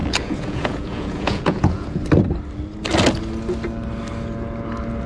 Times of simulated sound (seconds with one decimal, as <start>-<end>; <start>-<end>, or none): 0.0-2.0